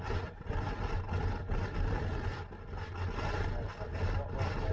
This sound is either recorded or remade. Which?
recorded